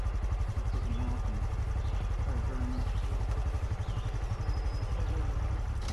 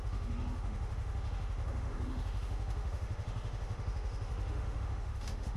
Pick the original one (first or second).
first